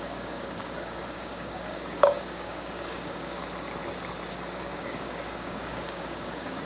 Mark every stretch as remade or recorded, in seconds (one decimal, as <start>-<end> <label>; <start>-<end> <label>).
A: 0.0-3.4 remade; 3.4-4.3 recorded; 4.3-6.7 remade